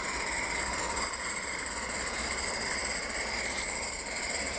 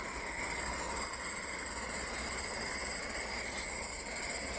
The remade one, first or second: first